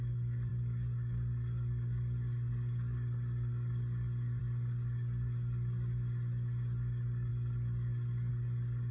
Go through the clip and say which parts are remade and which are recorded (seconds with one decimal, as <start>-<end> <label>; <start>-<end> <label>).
0.0-8.9 recorded